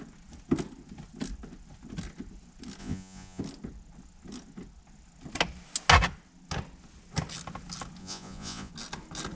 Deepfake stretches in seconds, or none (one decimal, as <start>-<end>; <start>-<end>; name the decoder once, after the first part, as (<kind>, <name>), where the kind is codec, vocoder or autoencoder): 2.8-3.4 (vocoder, Vocos); 8.0-8.7